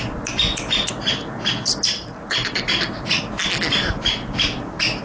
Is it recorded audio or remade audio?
recorded